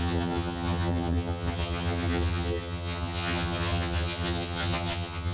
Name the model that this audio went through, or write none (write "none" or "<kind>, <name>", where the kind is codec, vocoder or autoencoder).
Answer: vocoder, HiFi-GAN